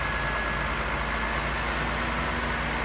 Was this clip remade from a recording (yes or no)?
no